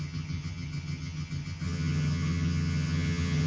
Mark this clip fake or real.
fake